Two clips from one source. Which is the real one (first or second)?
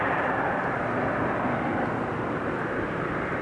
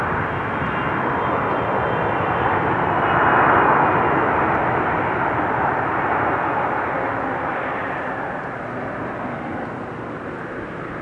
second